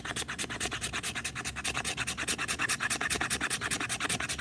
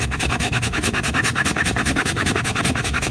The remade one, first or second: second